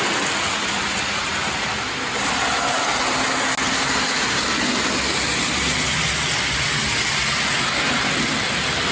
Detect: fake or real real